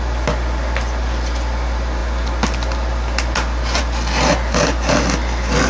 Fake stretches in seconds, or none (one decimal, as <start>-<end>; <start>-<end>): none